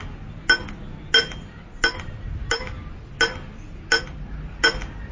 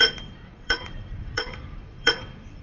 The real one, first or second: first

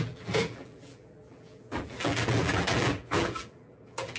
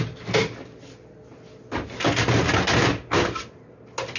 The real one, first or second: second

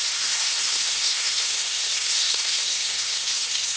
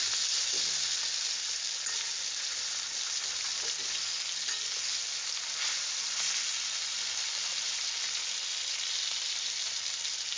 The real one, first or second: second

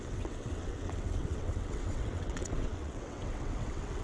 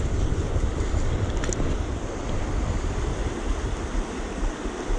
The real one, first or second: second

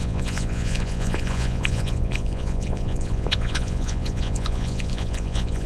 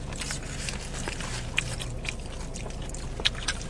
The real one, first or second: second